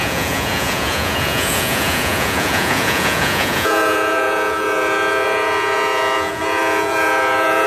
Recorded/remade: remade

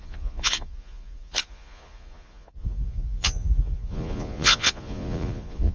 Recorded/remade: remade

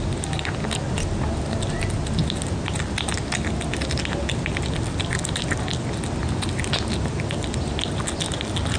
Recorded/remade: recorded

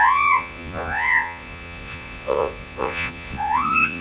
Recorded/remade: remade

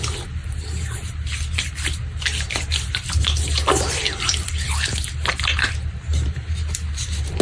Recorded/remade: recorded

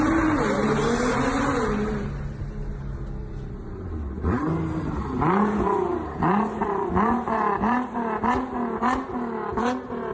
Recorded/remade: recorded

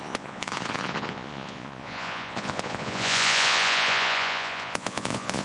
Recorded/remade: remade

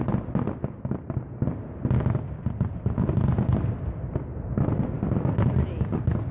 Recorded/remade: recorded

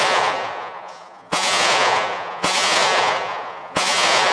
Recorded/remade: remade